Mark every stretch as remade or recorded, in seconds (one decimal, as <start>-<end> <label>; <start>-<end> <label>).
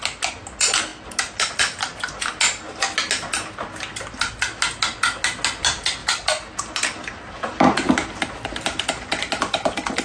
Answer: 0.0-10.0 recorded